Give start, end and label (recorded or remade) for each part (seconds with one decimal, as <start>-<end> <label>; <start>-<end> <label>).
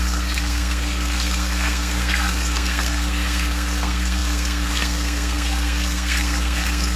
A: 0.0-7.0 remade